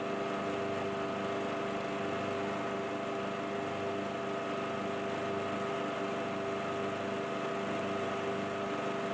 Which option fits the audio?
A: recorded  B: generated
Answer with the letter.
A